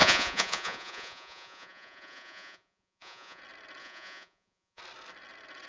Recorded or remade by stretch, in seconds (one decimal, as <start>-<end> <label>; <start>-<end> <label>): 0.0-3.4 remade; 3.4-3.8 recorded; 3.8-4.8 remade; 4.8-5.7 recorded